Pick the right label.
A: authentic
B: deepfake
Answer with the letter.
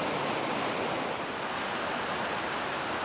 A